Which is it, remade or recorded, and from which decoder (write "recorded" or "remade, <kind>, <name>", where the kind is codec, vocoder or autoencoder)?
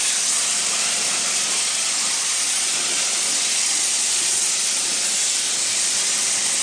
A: recorded